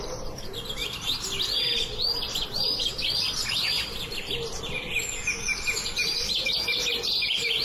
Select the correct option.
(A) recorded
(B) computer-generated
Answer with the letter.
A